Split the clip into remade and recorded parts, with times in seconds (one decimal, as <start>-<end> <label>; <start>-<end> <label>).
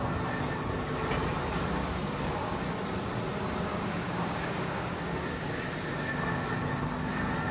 0.0-1.8 recorded; 1.8-2.6 remade; 2.6-3.7 recorded; 3.7-5.6 remade; 5.6-7.5 recorded